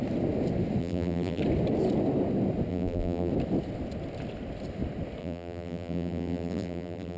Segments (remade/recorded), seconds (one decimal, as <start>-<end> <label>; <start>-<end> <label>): 0.0-0.8 recorded; 0.8-1.4 remade; 1.4-2.7 recorded; 2.7-3.3 remade; 3.3-5.2 recorded; 5.2-7.2 remade